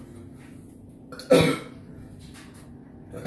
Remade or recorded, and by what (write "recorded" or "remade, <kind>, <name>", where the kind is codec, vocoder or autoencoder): recorded